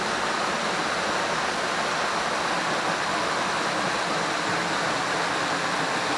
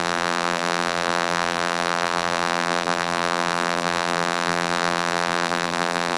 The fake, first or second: second